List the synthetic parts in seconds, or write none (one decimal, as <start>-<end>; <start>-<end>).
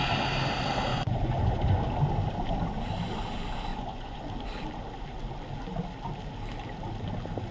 0.9-1.8; 3.7-4.2